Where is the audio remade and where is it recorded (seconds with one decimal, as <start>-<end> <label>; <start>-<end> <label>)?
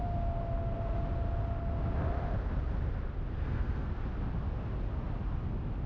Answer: 0.0-3.3 recorded; 3.3-4.0 remade; 4.0-5.9 recorded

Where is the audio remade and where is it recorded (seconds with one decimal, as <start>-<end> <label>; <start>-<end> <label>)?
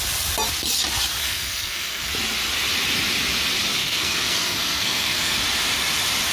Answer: 0.0-1.2 recorded; 1.2-2.1 remade; 2.1-3.8 recorded; 3.8-5.4 remade; 5.4-6.3 recorded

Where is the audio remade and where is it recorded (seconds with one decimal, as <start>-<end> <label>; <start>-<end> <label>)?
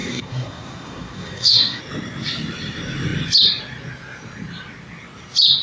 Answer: 0.0-1.8 remade; 1.8-5.6 recorded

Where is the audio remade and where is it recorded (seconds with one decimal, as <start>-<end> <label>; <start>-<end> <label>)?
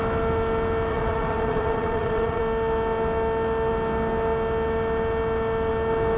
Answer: 0.0-0.9 recorded; 0.9-2.4 remade; 2.4-6.2 recorded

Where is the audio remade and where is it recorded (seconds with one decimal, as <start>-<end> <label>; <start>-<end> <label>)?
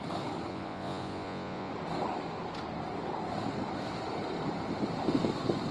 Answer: 0.0-0.5 recorded; 0.5-1.7 remade; 1.7-5.7 recorded